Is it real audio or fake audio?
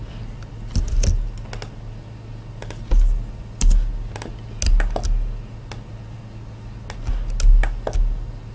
real